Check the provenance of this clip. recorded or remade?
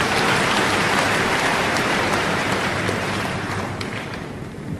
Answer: remade